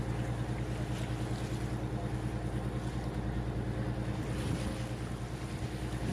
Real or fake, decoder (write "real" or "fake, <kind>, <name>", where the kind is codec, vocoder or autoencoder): real